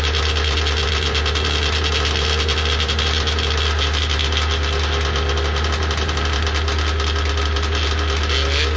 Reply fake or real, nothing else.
real